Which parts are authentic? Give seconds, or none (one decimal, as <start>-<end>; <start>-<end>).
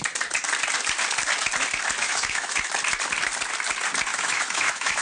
0.0-2.0; 2.7-4.1